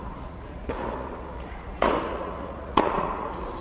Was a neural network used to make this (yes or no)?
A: yes